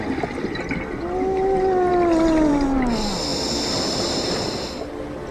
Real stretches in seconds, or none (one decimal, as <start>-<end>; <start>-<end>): 0.0-5.3